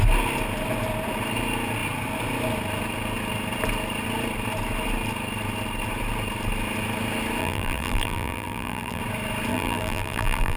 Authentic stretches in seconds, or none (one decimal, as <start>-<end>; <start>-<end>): 0.0-7.4; 9.0-9.5